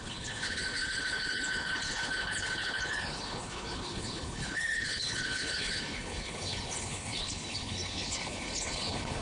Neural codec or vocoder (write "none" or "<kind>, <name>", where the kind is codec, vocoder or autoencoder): codec, HILCodec